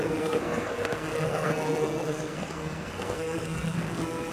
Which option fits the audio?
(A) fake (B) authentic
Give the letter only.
A